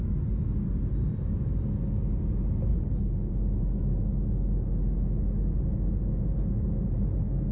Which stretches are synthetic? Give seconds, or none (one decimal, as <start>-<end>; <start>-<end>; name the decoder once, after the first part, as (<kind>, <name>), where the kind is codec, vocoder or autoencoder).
2.7-3.3 (codec, HILCodec)